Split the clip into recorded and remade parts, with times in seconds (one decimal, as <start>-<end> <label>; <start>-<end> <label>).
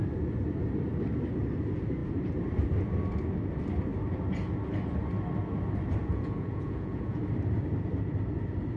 0.0-6.0 recorded; 6.0-7.2 remade; 7.2-8.8 recorded